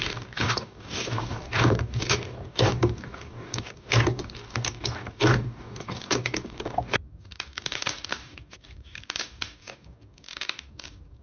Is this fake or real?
fake